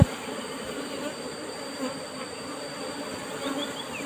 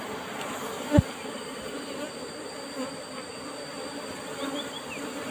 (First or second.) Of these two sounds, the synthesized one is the first